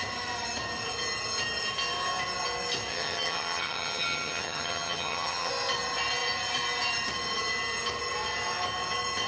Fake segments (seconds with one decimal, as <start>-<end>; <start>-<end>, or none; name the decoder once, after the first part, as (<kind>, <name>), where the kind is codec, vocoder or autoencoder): 2.9-5.5 (vocoder, HiFi-GAN)